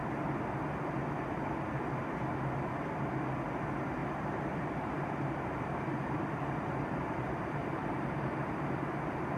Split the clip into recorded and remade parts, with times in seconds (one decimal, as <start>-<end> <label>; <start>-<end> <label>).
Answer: 0.0-4.0 recorded; 4.0-8.8 remade; 8.8-9.4 recorded